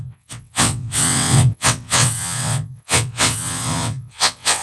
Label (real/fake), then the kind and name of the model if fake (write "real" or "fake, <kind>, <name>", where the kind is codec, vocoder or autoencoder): fake, vocoder, WaveNeXt